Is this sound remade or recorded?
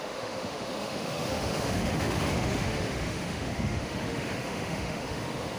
remade